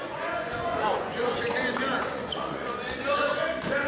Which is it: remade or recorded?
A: remade